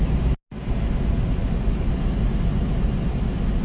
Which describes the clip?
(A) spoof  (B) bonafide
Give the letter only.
B